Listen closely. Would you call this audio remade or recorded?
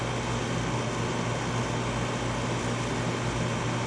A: recorded